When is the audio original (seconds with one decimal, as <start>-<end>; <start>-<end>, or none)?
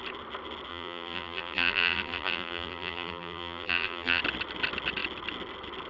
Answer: 0.0-0.7; 4.2-5.9